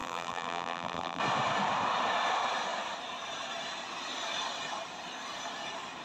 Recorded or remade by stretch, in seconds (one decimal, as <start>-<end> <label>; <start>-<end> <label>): 0.0-1.2 remade; 1.2-6.0 recorded